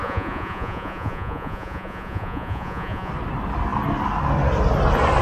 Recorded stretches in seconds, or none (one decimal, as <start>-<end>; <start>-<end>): 3.1-5.2